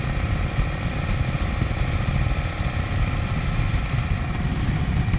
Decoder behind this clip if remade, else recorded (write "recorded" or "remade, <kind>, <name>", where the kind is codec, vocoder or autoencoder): recorded